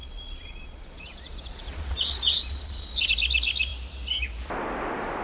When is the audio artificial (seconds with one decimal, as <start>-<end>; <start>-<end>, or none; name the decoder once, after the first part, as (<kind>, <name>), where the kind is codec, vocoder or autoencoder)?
0.0-3.1 (vocoder, Vocos)